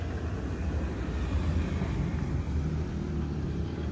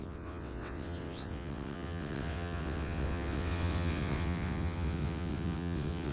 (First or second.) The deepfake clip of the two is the second